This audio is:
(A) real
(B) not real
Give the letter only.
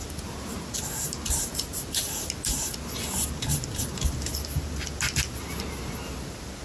A